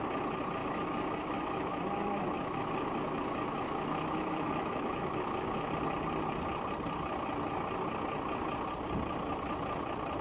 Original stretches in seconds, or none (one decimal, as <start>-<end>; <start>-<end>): 0.0-0.6; 5.7-10.2